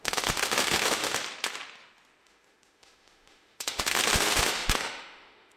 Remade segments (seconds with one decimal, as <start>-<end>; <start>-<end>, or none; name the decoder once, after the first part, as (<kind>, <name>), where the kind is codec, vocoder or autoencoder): 0.0-1.2 (autoencoder, DAC-VAE); 2.2-5.6